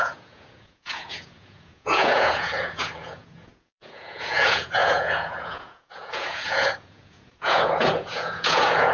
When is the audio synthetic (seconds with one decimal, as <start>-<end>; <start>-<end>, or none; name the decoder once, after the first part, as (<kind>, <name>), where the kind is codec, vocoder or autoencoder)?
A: 0.0-8.9 (vocoder, Vocos)